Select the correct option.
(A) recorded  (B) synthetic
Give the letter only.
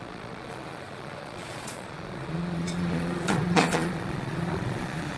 B